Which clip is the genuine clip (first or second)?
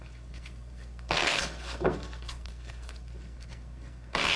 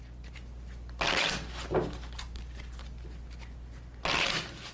second